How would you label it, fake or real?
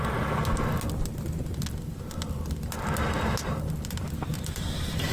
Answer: real